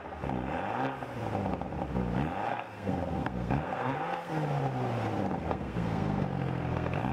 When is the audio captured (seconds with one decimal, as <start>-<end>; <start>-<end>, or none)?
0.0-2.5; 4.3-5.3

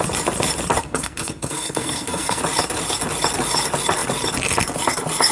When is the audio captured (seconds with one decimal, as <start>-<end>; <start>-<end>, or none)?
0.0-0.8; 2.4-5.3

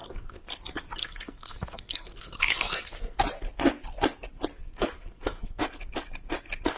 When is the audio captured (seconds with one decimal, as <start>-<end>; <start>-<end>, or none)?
0.5-1.0; 3.2-4.6; 5.6-6.8

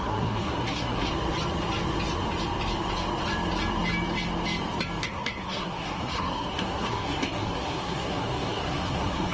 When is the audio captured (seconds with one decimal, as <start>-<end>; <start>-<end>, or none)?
1.1-5.0